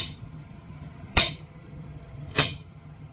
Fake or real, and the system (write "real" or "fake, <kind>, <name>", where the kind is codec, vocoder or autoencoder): fake, vocoder, HiFi-GAN